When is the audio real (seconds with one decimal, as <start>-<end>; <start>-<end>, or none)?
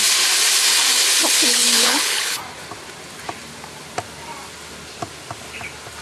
0.0-1.4; 2.4-6.0